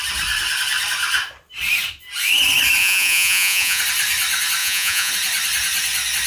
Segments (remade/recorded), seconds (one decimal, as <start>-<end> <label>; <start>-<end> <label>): 0.0-2.8 recorded; 2.8-3.8 remade; 3.8-4.6 recorded; 4.6-5.1 remade; 5.1-6.3 recorded